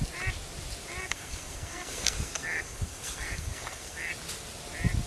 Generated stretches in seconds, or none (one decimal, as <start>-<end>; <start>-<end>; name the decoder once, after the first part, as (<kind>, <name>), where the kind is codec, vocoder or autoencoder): 1.0-4.1 (codec, SNAC)